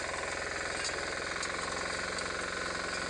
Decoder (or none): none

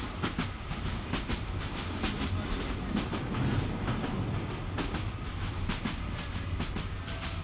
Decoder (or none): none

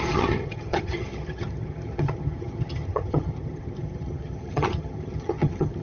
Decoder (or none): vocoder, HiFi-GAN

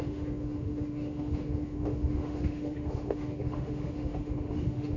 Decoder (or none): autoencoder, DAC-VAE